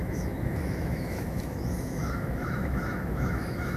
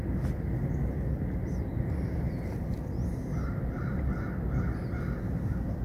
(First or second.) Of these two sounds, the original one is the second